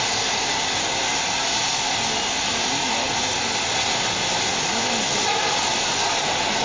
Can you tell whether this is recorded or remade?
recorded